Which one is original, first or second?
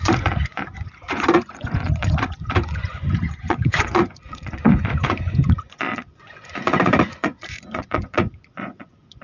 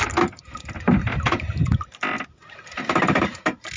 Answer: second